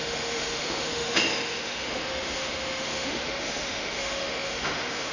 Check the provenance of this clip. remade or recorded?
remade